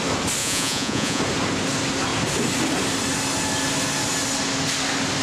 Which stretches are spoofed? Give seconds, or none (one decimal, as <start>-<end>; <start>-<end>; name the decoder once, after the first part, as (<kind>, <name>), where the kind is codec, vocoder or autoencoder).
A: 0.4-1.2 (vocoder, Vocos)